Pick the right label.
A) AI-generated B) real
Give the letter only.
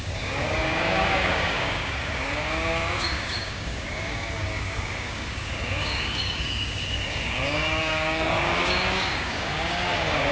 A